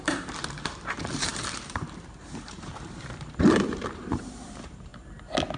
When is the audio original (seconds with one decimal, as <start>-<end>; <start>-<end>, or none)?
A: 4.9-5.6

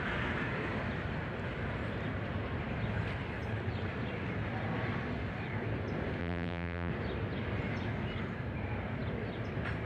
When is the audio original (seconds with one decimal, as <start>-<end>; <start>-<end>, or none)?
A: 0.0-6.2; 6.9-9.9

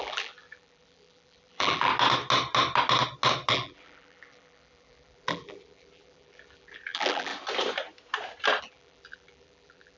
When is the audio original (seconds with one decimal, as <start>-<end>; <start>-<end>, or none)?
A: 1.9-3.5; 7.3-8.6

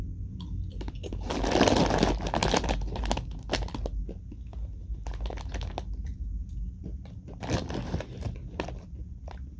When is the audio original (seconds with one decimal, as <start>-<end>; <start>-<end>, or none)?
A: 0.0-2.4; 3.0-9.6